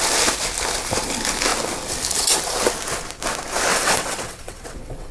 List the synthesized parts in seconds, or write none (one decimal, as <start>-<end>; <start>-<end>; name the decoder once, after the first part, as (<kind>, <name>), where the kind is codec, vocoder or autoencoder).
3.7-5.1 (vocoder, WaveNeXt)